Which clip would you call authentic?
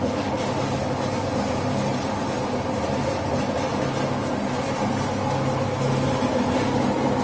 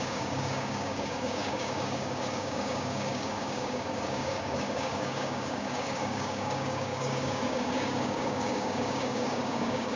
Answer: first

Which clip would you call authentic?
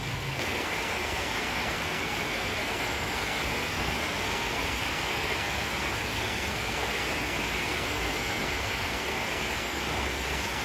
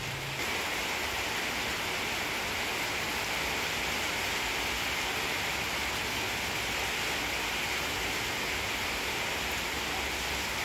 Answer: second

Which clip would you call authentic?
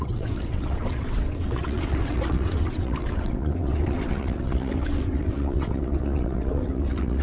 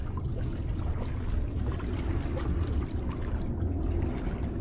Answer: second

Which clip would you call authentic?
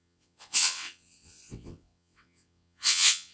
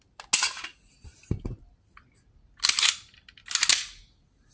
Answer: second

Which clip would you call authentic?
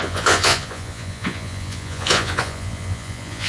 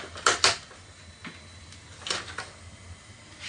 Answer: second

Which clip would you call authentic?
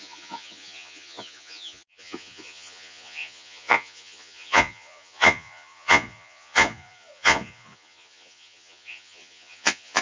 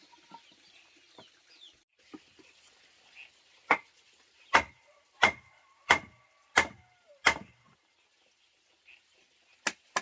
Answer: second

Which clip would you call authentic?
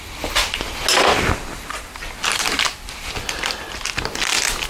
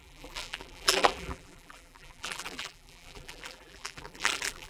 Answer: first